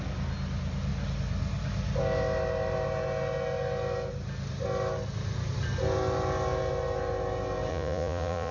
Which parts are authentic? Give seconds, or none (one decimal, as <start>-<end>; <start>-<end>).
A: 0.0-7.7